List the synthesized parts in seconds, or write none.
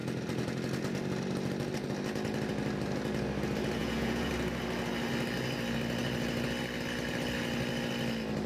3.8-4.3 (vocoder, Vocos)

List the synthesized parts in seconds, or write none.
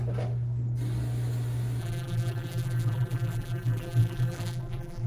1.8-5.1 (vocoder, BigVGAN v2)